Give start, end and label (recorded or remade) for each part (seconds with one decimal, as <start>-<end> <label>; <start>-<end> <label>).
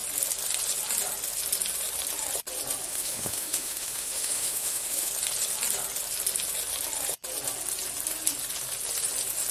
0.0-2.9 recorded; 2.9-5.1 remade; 5.1-9.5 recorded